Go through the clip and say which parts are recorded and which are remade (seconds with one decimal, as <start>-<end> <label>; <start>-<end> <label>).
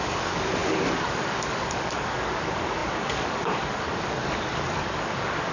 0.0-5.5 remade